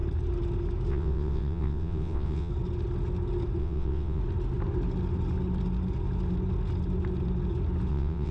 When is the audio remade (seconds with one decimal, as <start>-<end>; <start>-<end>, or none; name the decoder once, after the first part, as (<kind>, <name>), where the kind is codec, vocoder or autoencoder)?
0.9-2.5 (vocoder, WaveNeXt); 3.6-4.2; 7.9-8.3